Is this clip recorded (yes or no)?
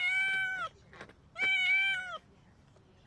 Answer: yes